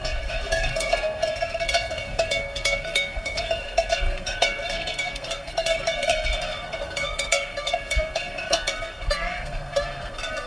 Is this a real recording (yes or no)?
no